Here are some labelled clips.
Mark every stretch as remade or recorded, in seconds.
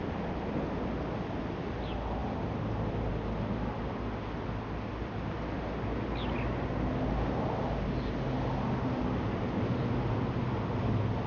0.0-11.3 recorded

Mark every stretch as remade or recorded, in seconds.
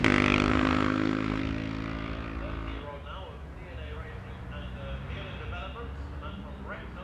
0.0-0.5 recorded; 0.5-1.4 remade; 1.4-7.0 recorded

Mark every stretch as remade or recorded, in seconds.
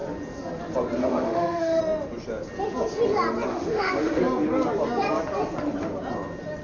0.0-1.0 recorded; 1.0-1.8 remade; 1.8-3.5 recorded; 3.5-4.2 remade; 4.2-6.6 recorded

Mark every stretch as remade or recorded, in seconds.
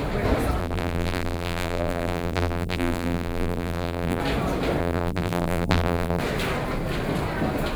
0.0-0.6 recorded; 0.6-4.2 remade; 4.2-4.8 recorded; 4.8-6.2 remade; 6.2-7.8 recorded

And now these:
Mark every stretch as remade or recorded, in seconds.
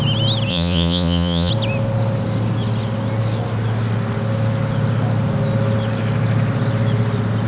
0.0-0.5 recorded; 0.5-1.5 remade; 1.5-7.5 recorded